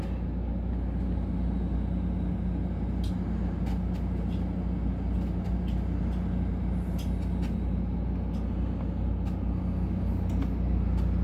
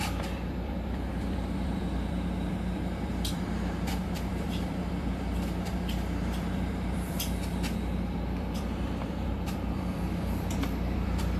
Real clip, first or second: first